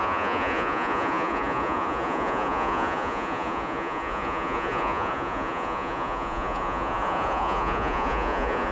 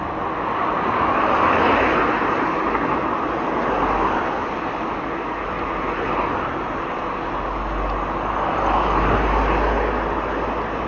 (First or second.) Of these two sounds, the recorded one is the second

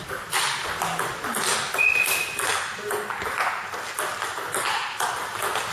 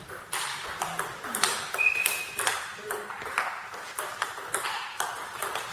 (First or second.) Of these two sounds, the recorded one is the first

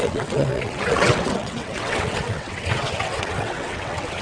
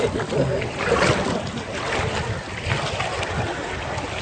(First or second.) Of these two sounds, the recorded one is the second